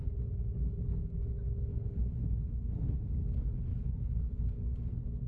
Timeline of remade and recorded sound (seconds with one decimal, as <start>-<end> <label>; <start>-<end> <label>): 0.0-1.7 recorded; 1.7-3.1 remade; 3.1-3.7 recorded; 3.7-4.4 remade; 4.4-5.3 recorded